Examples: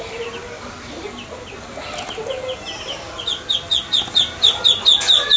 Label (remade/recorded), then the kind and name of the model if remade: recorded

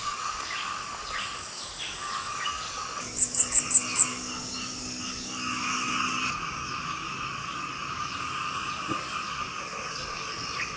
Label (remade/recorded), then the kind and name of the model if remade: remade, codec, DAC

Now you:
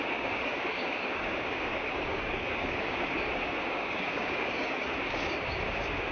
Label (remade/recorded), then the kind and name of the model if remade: remade, codec, DAC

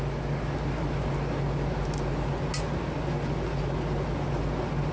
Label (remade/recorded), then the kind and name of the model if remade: recorded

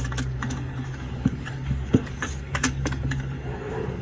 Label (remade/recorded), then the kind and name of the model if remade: remade, codec, DAC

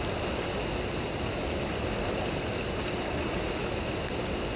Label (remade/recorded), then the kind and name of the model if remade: recorded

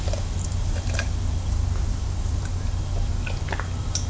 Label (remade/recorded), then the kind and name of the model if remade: recorded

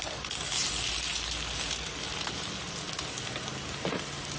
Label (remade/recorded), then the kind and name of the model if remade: recorded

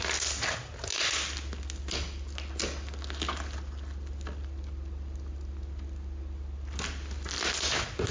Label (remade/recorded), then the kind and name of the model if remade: recorded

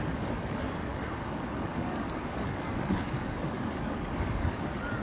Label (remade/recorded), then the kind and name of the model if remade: remade, codec, DAC